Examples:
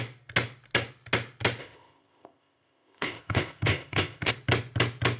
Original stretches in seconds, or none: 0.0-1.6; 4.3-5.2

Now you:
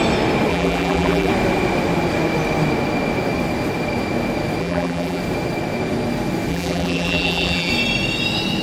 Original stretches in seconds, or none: 0.0-0.5; 1.3-4.6; 5.2-6.5; 7.7-8.6